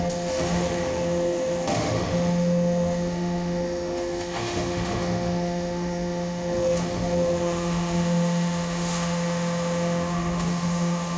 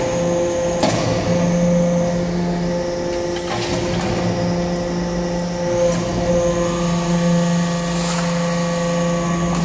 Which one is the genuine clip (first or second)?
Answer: second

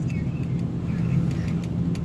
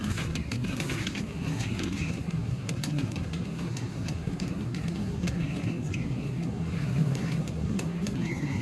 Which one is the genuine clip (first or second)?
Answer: first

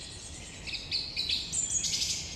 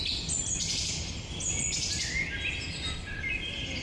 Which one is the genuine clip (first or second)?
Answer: first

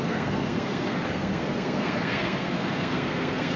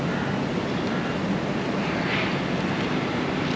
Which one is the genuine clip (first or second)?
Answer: second